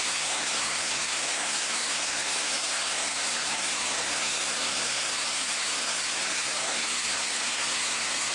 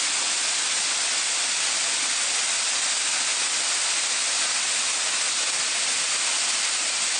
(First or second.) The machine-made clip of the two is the first